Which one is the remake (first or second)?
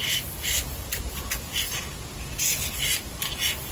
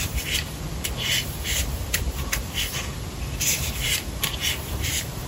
second